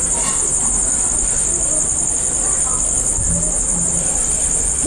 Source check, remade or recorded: recorded